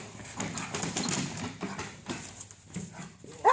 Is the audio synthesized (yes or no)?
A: no